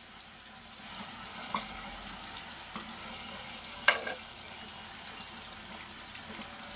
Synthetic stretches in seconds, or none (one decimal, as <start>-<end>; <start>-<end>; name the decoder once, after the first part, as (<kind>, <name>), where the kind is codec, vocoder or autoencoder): 1.3-1.9 (codec, DAC); 3.0-4.6